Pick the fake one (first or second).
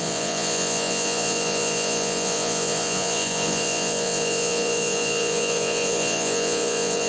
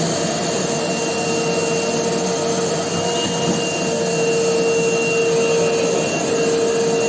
first